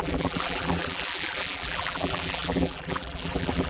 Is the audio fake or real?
fake